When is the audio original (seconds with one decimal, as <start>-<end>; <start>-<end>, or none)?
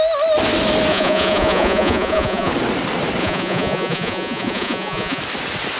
0.0-0.9; 2.5-3.2; 5.2-5.8